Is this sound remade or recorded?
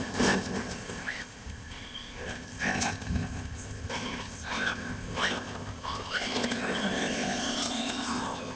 remade